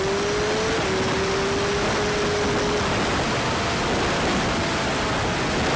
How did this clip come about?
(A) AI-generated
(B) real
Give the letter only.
B